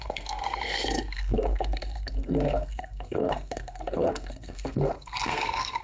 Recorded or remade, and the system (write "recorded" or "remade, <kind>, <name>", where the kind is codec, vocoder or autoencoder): remade, codec, SNAC